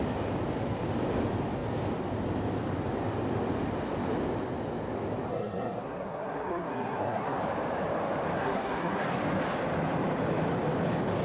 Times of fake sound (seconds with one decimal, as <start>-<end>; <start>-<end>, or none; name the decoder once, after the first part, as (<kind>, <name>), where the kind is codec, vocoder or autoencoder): 5.3-7.4 (codec, SNAC); 8.4-9.2